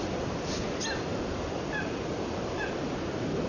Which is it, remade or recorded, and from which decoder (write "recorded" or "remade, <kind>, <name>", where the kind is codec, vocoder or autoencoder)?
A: recorded